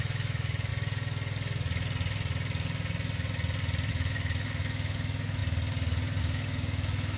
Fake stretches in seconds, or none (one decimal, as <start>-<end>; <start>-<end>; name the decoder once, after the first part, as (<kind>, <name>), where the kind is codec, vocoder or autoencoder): 0.0-0.7 (autoencoder, DAC-VAE); 3.9-5.4; 6.2-7.2